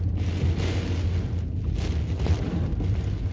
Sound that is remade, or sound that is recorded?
recorded